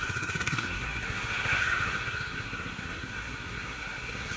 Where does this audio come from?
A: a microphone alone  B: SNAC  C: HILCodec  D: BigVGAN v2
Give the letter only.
B